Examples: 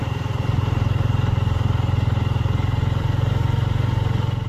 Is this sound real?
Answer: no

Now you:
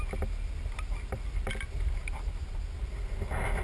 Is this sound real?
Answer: yes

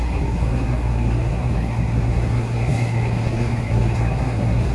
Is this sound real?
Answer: no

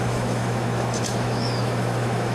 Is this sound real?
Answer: no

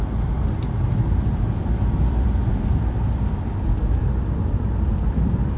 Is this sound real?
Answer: no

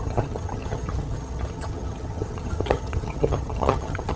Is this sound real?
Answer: no